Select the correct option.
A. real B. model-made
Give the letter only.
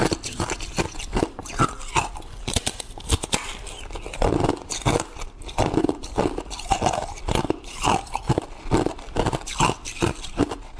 B